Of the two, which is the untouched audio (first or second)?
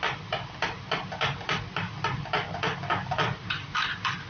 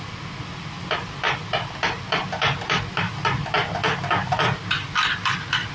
second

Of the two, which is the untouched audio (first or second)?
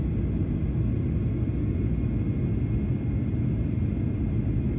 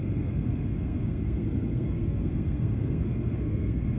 first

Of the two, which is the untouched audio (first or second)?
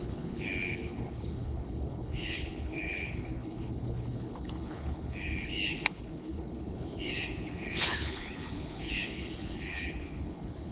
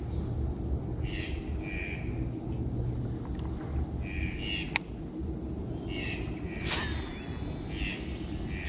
second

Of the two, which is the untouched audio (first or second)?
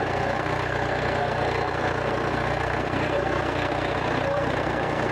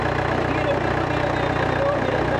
second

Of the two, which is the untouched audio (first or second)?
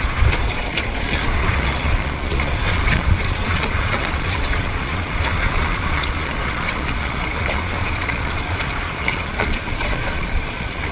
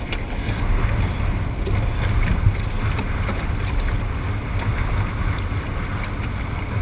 second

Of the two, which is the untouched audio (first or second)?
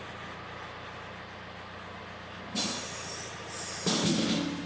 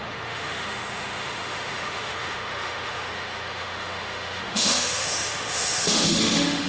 first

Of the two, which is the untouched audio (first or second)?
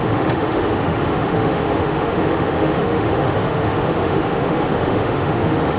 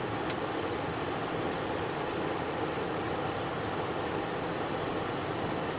second